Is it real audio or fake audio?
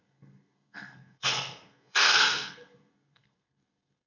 fake